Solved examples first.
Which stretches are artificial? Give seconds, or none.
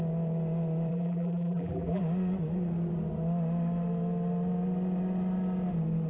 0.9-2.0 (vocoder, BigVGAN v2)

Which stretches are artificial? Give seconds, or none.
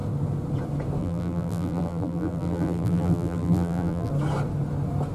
1.0-4.1 (vocoder, BigVGAN v2)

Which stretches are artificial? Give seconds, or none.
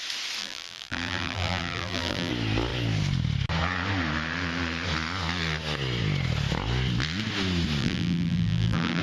0.4-2.3 (vocoder, BigVGAN v2); 7.8-9.0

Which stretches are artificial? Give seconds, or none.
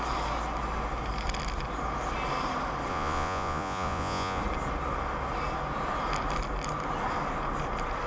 2.9-4.4 (vocoder, Vocos)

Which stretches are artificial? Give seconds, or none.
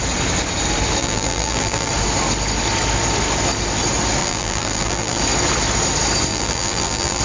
1.0-1.9 (vocoder, BigVGAN v2); 4.2-5.2; 6.3-7.2